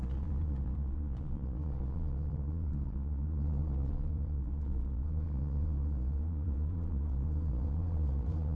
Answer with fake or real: fake